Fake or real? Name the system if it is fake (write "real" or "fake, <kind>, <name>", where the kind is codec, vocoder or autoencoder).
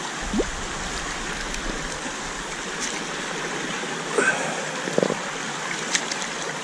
real